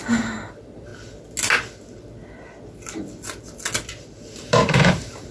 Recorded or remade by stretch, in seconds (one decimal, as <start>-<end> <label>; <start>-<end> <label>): 0.0-0.9 remade; 0.9-4.0 recorded; 4.0-5.3 remade